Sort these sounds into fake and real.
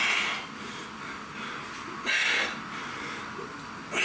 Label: real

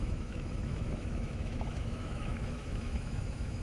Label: fake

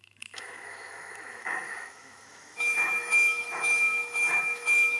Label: fake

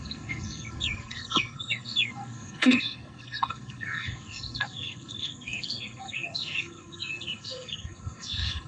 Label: fake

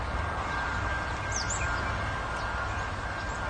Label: real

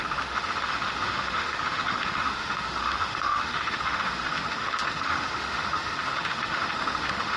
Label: fake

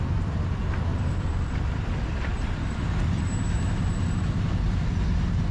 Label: fake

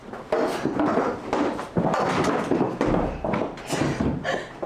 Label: real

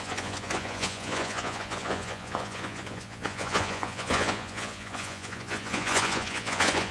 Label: fake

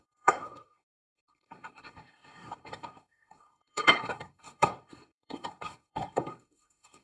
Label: fake